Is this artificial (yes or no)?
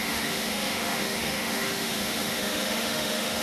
yes